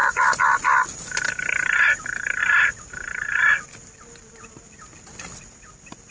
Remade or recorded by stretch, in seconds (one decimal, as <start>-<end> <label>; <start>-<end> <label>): 0.0-0.9 remade; 0.9-2.4 recorded; 2.4-6.1 remade